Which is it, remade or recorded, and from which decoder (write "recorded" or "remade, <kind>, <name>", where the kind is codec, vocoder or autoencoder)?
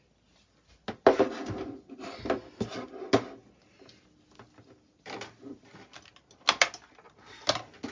recorded